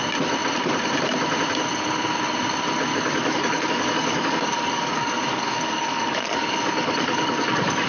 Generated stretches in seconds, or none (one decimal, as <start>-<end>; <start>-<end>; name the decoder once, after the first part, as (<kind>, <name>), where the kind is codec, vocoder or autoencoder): 2.9-7.9 (codec, DAC)

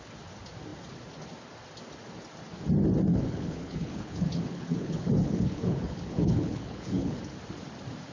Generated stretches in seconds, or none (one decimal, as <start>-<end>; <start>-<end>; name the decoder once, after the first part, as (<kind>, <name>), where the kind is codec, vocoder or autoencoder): 3.1-7.2 (codec, HILCodec)

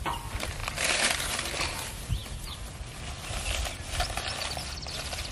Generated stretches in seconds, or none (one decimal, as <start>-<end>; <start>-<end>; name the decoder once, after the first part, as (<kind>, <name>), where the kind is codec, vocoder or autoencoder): none

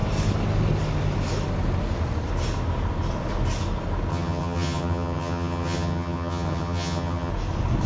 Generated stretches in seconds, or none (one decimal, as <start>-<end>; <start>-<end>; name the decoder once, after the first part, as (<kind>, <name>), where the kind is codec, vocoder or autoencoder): 4.1-7.3 (vocoder, HiFi-GAN)

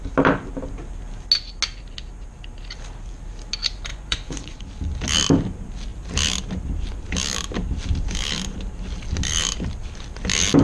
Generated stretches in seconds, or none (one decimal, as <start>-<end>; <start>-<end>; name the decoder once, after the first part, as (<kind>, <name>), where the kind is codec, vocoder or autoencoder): 3.9-4.6 (vocoder, Vocos)